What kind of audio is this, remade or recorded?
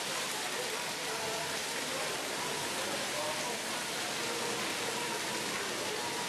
remade